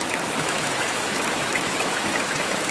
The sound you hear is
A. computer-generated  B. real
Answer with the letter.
A